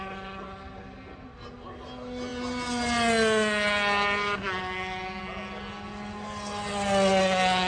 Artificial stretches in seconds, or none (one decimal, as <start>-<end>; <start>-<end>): none